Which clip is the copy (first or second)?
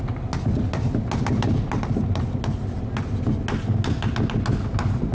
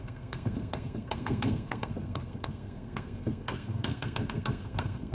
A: second